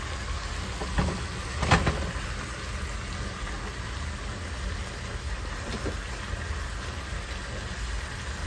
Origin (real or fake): real